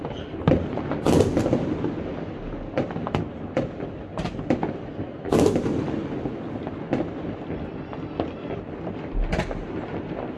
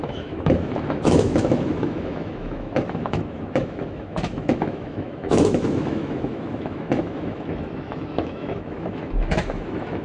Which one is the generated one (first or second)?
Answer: second